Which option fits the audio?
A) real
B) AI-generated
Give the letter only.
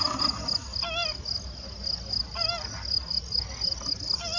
A